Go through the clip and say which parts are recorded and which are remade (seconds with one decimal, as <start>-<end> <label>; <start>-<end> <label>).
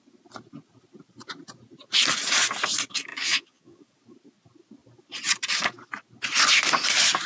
0.0-3.1 recorded; 3.1-3.8 remade; 3.8-7.3 recorded